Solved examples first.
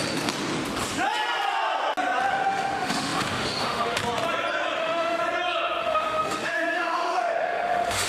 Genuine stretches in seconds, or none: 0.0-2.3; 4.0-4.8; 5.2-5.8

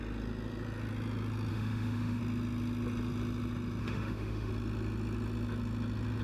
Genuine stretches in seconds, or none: 0.0-1.5; 2.2-3.8; 4.5-6.2